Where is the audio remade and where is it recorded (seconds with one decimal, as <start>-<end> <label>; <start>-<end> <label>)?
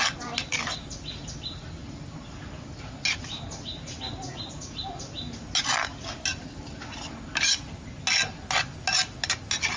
0.0-9.8 recorded